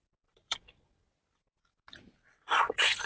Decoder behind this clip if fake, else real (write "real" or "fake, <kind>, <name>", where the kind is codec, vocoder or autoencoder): fake, vocoder, BigVGAN v2